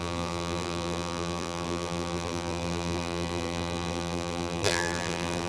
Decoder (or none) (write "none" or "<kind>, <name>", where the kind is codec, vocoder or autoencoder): vocoder, BigVGAN v2